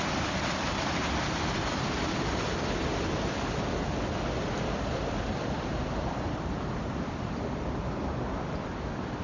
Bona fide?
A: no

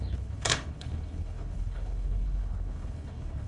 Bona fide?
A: no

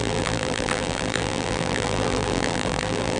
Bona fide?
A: no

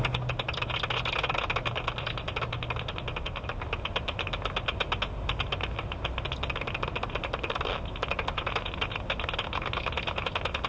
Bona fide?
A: yes